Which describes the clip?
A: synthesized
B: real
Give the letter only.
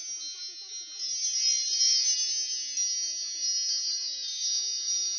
B